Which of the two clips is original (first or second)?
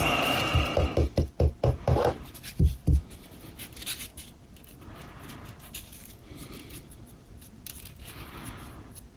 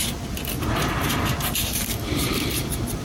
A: second